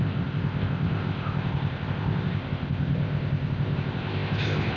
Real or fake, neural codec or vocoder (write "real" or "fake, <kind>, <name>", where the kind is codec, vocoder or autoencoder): fake, codec, ZipCodec